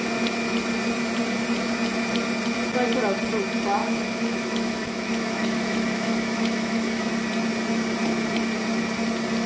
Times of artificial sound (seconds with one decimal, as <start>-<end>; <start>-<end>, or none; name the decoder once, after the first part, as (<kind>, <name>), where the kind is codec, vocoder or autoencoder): 3.8-7.1 (autoencoder, DAC-VAE)